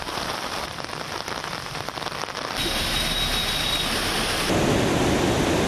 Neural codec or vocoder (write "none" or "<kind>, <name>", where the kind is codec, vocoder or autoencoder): none